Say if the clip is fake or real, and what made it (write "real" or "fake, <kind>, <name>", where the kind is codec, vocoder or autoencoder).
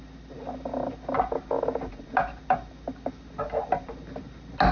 real